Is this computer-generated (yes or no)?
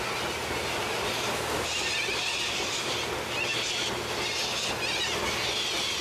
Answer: no